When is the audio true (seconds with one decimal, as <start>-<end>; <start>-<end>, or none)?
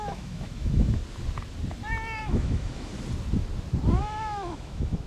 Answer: 1.0-2.2; 2.9-4.0